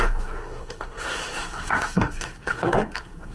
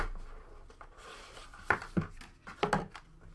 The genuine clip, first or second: second